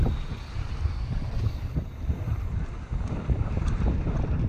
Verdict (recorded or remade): recorded